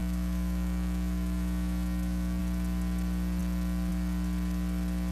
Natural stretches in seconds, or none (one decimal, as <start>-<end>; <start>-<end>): 2.4-5.1